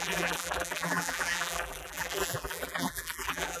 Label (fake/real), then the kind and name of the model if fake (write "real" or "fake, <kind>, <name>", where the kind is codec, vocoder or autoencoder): fake, vocoder, BigVGAN v2